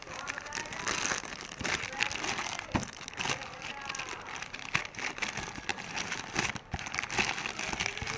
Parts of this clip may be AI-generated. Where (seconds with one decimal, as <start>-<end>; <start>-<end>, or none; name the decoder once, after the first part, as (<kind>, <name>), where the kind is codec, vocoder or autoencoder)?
none